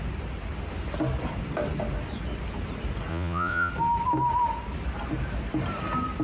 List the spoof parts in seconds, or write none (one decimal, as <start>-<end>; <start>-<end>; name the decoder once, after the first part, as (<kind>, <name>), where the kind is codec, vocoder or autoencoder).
3.1-3.7 (vocoder, Vocos)